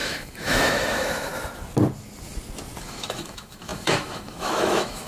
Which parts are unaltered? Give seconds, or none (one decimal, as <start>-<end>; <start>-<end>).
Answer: 1.3-2.8